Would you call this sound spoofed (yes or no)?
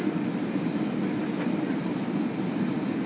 no